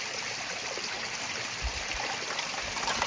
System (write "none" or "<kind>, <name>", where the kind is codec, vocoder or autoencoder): none